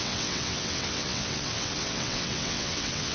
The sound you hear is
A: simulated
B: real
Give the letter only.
A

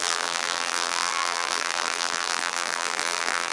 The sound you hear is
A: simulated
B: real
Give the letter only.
A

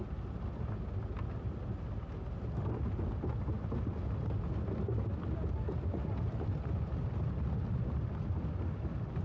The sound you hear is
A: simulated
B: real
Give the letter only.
B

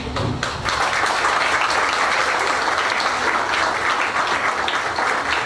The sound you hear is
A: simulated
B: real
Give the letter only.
B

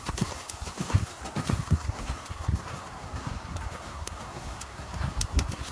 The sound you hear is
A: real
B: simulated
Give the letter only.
B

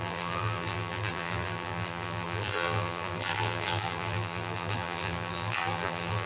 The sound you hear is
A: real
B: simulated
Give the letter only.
B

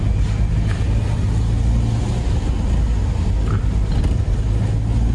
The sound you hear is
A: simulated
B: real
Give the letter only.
B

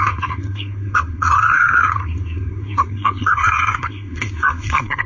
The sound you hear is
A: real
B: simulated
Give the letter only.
B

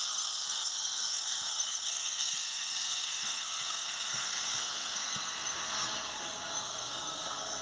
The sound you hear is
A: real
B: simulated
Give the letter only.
B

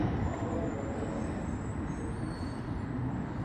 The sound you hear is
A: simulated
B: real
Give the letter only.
B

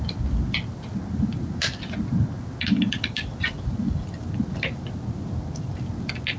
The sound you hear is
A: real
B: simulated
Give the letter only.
A